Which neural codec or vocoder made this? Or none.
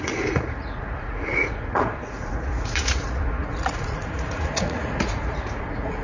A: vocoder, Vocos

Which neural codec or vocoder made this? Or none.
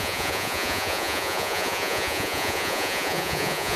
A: vocoder, Vocos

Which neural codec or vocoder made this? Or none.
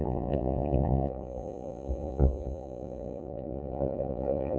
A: vocoder, Vocos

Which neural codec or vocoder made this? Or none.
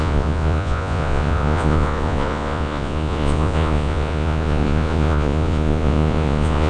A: vocoder, Vocos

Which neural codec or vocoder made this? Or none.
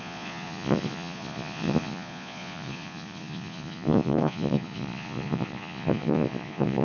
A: vocoder, Vocos